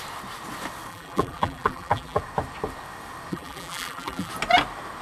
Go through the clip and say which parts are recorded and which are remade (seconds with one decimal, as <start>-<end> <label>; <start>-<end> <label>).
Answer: 0.0-0.9 recorded; 0.9-2.2 remade; 2.2-3.3 recorded; 3.3-4.3 remade; 4.3-5.0 recorded

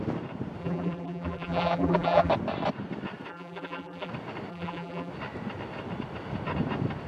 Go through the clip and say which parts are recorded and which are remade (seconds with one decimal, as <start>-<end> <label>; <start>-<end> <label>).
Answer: 0.0-0.6 recorded; 0.6-2.3 remade; 2.3-3.3 recorded; 3.3-4.1 remade; 4.1-4.5 recorded; 4.5-5.1 remade; 5.1-7.1 recorded

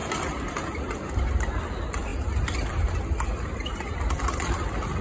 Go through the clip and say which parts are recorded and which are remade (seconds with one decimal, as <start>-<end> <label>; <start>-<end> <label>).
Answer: 0.0-0.9 recorded; 0.9-5.0 remade

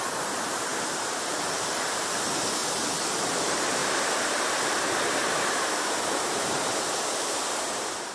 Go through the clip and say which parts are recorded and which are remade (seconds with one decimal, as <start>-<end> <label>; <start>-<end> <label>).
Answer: 0.0-2.6 remade; 2.6-3.4 recorded; 3.4-8.1 remade

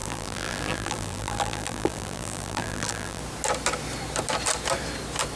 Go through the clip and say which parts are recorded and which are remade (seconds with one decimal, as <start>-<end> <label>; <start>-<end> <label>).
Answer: 0.0-3.2 remade; 3.2-5.4 recorded

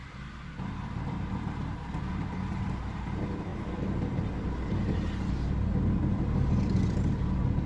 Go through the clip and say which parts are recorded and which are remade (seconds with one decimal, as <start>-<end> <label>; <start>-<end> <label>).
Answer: 0.0-7.7 remade